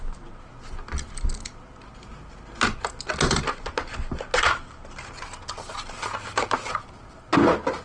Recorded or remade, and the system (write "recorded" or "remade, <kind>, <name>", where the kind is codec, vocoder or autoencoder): recorded